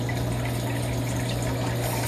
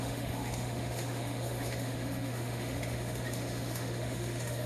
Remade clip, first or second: second